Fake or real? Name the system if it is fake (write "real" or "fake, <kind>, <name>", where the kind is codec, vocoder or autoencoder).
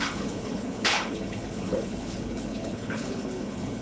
fake, codec, HILCodec